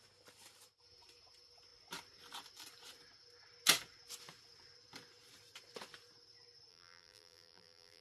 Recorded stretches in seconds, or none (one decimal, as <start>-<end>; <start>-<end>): 0.0-6.7